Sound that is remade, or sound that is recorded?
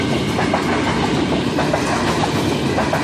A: recorded